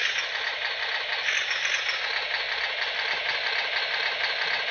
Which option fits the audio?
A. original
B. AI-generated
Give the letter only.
A